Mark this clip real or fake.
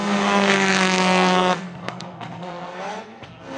fake